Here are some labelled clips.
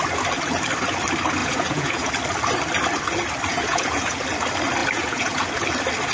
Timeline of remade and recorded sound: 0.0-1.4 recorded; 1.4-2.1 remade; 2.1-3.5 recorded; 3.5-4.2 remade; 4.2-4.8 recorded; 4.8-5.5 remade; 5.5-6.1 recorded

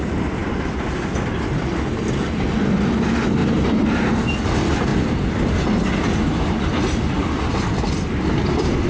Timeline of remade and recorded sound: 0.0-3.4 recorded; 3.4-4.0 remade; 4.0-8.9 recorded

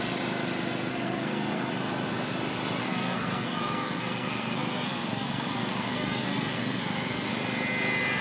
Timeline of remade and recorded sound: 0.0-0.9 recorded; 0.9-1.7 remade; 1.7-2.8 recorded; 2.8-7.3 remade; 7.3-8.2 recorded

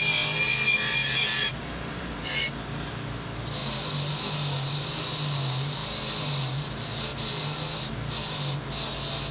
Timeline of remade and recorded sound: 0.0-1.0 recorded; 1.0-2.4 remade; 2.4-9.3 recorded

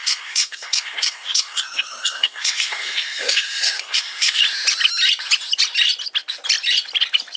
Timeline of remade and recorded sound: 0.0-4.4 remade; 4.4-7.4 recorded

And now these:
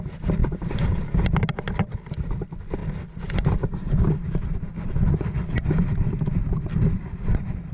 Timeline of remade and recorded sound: 0.0-0.4 recorded; 0.4-1.0 remade; 1.0-2.8 recorded; 2.8-5.7 remade; 5.7-7.7 recorded

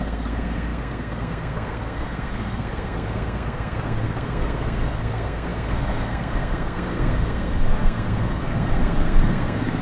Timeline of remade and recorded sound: 0.0-9.8 remade

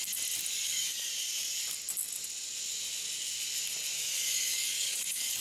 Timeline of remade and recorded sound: 0.0-0.5 recorded; 0.5-1.1 remade; 1.1-4.0 recorded; 4.0-5.4 remade